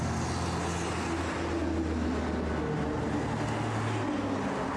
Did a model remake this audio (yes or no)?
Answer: no